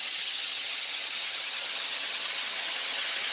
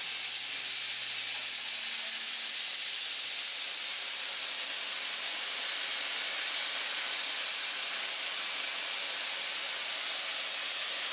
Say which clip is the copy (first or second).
first